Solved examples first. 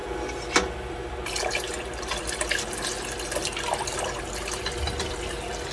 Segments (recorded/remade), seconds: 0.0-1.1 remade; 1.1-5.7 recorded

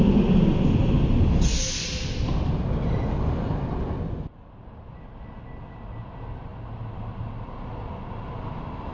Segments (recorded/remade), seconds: 0.0-8.9 recorded

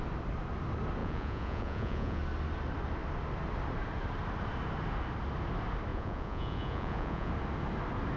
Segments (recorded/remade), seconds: 0.0-1.0 recorded; 1.0-2.2 remade; 2.2-5.9 recorded; 5.9-7.3 remade; 7.3-8.2 recorded

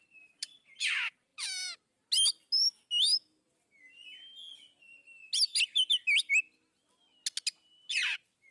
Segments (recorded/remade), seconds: 0.0-8.5 recorded